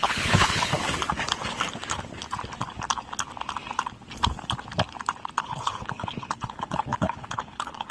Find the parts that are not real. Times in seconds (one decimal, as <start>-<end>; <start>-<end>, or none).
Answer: 0.0-0.7; 5.4-7.9